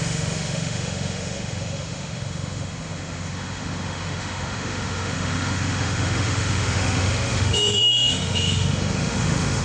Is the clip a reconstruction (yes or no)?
yes